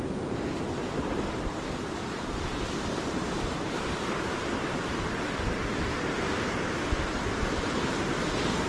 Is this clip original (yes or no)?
no